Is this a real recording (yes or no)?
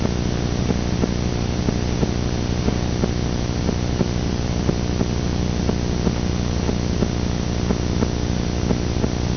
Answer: yes